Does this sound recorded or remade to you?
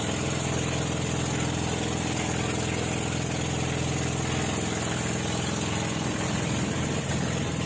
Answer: recorded